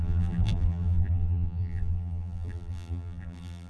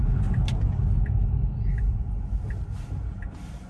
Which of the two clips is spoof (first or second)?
first